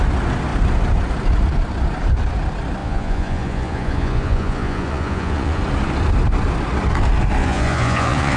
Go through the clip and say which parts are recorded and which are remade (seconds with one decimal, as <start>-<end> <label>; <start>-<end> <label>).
0.0-2.8 recorded; 2.8-5.6 remade; 5.6-7.4 recorded; 7.4-8.4 remade